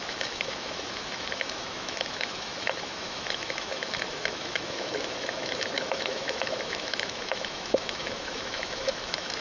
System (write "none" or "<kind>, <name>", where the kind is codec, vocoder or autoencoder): autoencoder, DAC-VAE